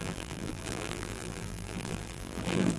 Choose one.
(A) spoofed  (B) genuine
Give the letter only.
A